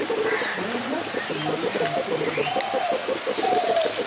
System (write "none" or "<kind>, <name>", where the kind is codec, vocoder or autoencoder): none